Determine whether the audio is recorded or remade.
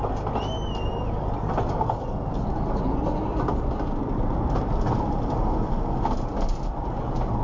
recorded